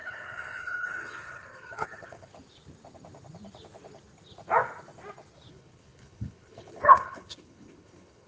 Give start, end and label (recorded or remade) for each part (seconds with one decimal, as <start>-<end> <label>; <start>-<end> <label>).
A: 0.0-2.3 remade; 2.3-5.5 recorded; 5.5-8.3 remade